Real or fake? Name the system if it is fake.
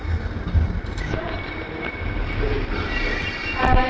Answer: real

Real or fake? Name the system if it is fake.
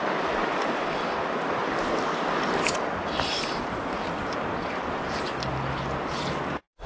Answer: real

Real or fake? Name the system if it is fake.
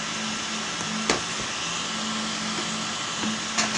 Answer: real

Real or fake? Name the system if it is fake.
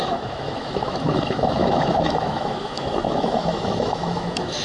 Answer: fake, autoencoder, DAC-VAE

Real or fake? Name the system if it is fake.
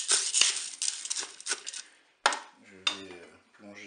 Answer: real